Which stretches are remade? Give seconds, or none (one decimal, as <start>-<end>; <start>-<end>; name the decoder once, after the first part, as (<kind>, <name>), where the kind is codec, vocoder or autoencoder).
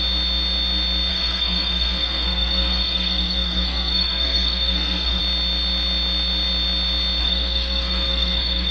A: 1.1-5.2 (codec, SNAC); 7.2-8.7